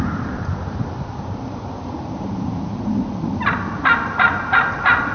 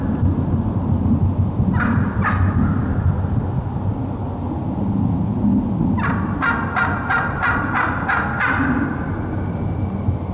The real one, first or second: second